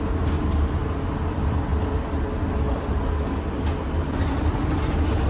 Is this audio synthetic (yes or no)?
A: no